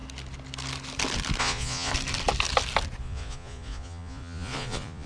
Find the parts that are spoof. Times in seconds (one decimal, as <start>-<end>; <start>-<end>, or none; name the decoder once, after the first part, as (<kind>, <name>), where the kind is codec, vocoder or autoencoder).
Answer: 1.4-1.9 (vocoder, Vocos); 3.0-5.1